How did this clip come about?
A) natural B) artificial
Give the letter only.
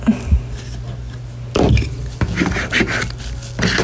A